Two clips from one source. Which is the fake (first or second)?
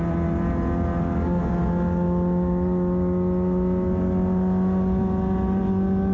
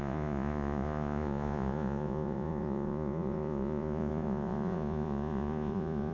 second